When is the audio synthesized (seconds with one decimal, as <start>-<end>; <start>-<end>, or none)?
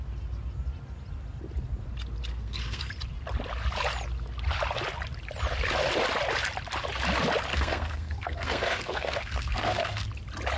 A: 2.3-2.9; 7.5-10.1